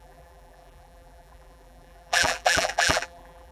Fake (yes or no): yes